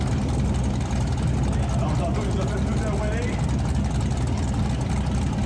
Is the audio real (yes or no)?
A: yes